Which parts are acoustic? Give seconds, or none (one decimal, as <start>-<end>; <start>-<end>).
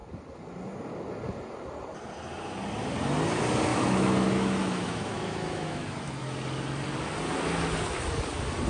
0.0-3.7; 6.2-8.7